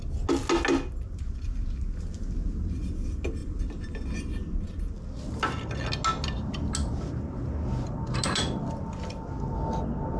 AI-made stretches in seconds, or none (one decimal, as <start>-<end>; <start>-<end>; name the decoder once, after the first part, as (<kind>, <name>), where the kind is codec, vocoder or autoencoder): none